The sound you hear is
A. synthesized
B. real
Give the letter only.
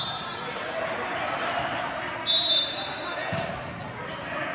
B